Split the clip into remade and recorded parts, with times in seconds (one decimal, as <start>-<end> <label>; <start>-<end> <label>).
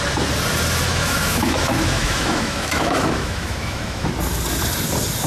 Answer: 0.0-0.9 recorded; 0.9-4.1 remade; 4.1-5.3 recorded